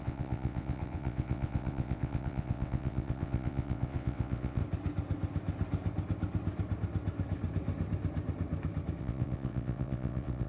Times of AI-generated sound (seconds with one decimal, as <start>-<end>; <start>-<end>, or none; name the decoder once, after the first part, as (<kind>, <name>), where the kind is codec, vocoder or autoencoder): 0.0-4.6 (vocoder, WaveNeXt); 9.0-10.5